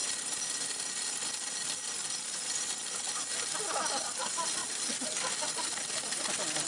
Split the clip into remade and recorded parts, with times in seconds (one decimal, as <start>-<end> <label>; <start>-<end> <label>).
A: 0.0-6.7 recorded